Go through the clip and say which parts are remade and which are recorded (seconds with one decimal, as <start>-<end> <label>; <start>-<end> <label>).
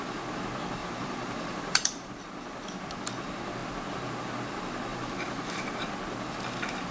0.0-0.8 recorded; 0.8-2.1 remade; 2.1-4.9 recorded; 4.9-5.8 remade; 5.8-6.9 recorded